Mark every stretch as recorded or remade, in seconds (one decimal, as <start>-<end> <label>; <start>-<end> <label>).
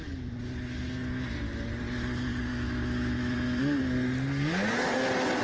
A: 0.0-2.5 recorded; 2.5-3.6 remade; 3.6-5.4 recorded